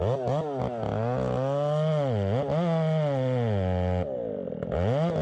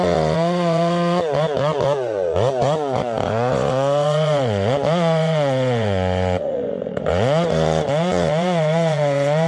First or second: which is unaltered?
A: first